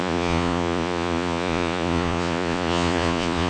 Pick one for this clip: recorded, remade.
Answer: remade